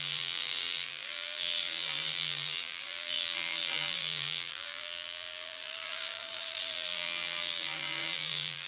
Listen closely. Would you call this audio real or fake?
fake